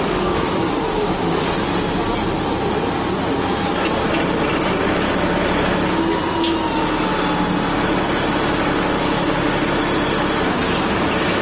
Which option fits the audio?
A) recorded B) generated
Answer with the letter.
A